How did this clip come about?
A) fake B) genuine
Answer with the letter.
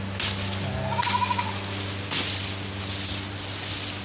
B